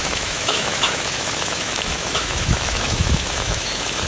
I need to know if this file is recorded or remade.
remade